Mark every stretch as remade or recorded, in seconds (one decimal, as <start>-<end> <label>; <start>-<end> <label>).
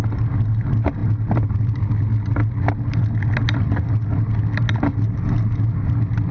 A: 0.0-6.3 recorded